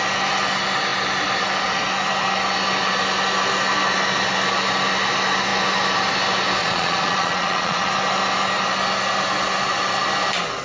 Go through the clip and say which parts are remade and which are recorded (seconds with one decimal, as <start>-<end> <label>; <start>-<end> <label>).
0.0-6.6 recorded; 6.6-7.9 remade; 7.9-10.6 recorded